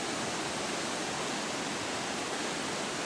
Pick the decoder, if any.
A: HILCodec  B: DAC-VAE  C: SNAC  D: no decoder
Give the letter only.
D